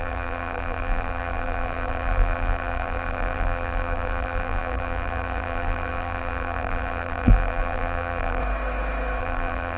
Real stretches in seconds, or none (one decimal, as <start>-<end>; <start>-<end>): 8.4-9.2